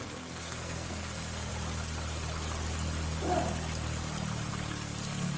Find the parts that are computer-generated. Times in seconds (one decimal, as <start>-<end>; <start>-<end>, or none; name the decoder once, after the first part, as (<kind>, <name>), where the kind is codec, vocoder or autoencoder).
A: 0.0-1.5 (codec, SNAC); 4.5-5.4